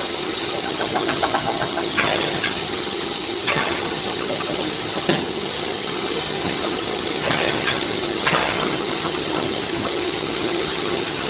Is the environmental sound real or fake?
fake